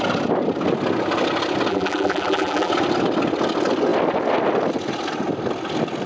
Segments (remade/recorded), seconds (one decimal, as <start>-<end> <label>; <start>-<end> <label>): 0.0-1.7 recorded; 1.7-2.7 remade; 2.7-6.1 recorded